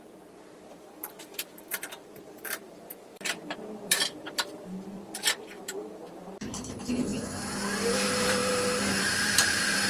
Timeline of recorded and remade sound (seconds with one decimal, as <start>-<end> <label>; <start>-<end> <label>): 0.0-7.1 remade; 7.1-7.9 recorded; 7.9-9.9 remade